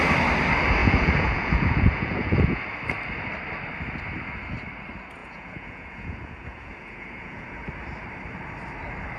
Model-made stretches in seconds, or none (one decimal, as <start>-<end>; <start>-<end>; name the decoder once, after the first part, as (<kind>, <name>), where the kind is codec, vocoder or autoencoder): 0.8-2.6 (vocoder, Vocos); 5.2-7.7